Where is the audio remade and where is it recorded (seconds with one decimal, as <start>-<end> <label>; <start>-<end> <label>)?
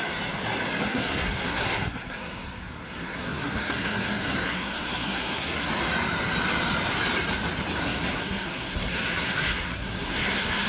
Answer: 0.0-0.8 recorded; 0.8-5.7 remade; 5.7-7.8 recorded; 7.8-10.7 remade